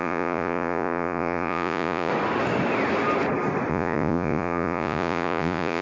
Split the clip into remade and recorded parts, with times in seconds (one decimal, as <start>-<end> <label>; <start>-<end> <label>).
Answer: 0.0-2.1 remade; 2.1-3.7 recorded; 3.7-5.8 remade